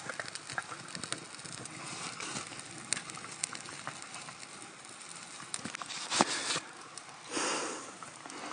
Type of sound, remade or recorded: recorded